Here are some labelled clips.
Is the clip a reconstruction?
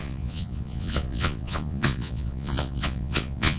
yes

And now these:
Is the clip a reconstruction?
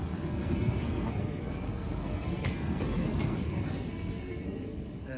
yes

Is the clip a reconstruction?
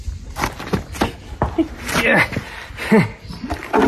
no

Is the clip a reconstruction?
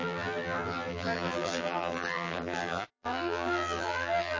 yes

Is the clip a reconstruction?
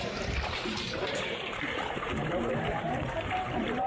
yes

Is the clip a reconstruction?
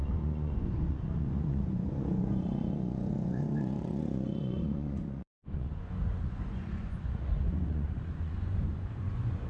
yes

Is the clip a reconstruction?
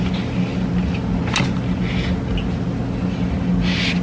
no